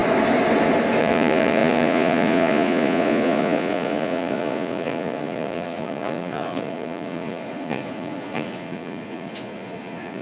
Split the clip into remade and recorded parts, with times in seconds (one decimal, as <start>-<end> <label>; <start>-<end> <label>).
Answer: 0.0-1.0 recorded; 1.0-10.2 remade